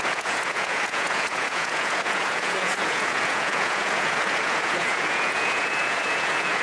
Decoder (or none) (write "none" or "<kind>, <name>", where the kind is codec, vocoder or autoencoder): vocoder, Vocos